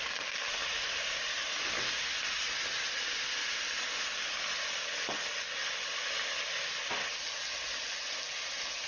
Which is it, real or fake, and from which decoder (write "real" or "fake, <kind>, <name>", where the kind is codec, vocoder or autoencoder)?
real